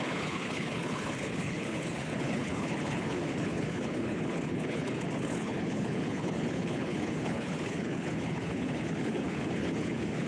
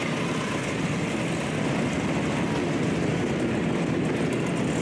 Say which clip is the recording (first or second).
second